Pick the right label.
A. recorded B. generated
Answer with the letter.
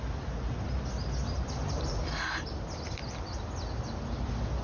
A